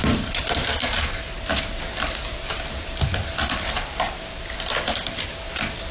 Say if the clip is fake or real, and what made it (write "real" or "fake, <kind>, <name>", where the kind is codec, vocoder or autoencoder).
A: real